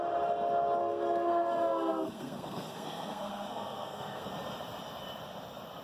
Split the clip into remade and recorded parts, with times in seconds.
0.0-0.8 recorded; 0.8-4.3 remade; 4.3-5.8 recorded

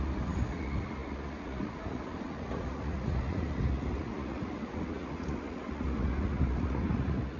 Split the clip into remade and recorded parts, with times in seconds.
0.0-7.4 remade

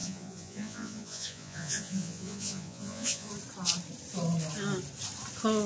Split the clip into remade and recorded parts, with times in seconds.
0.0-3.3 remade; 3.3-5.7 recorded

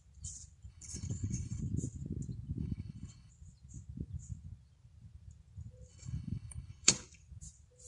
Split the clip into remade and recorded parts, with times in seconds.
0.0-0.7 recorded; 0.7-1.6 remade; 1.6-2.6 recorded; 2.6-3.3 remade; 3.3-5.9 recorded; 5.9-6.9 remade; 6.9-7.9 recorded

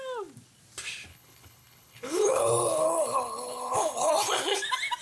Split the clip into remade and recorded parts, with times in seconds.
0.0-1.1 recorded; 1.1-4.1 remade; 4.1-5.0 recorded

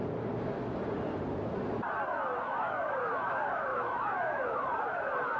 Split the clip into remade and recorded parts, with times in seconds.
0.0-2.4 recorded; 2.4-5.4 remade

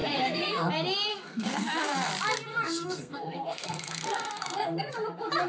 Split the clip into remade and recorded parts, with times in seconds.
0.0-0.7 remade; 0.7-1.1 recorded; 1.1-2.1 remade; 2.1-2.5 recorded; 2.5-4.9 remade; 4.9-5.5 recorded